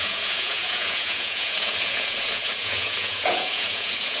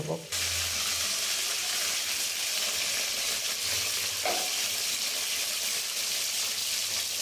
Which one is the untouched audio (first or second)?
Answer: second